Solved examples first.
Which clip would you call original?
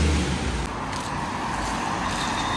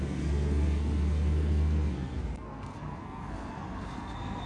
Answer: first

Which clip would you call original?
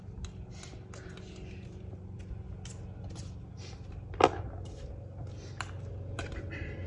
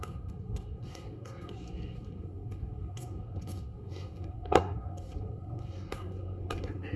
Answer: first